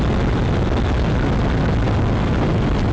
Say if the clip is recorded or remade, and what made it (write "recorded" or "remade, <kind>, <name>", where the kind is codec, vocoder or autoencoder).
recorded